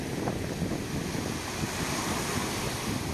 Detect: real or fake real